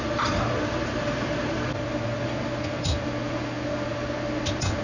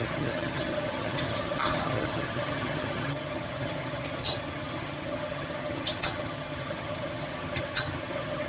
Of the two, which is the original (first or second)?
first